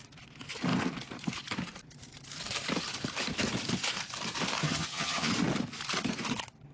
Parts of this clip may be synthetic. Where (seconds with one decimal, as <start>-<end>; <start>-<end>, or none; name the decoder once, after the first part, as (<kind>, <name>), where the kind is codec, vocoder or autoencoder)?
4.6-5.3 (vocoder, HiFi-GAN)